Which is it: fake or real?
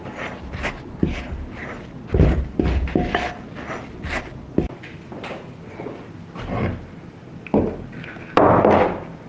real